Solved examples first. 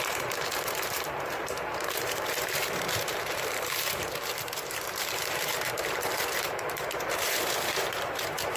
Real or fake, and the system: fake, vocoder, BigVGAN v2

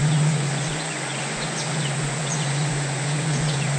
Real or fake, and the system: fake, vocoder, Vocos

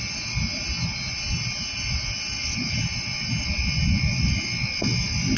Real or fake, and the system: real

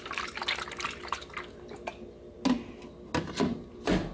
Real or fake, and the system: real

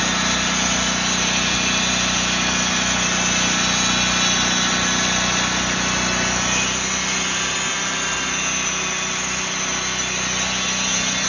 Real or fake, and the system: real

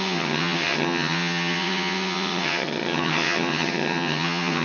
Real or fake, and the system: fake, vocoder, HiFi-GAN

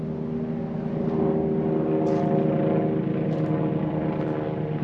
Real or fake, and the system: real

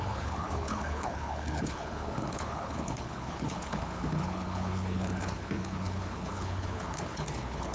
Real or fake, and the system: fake, codec, HILCodec